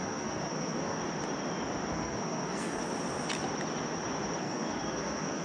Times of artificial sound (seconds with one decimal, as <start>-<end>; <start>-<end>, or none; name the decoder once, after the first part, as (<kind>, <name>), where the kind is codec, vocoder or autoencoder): 0.0-1.0 (codec, SNAC); 1.9-2.8; 4.4-5.4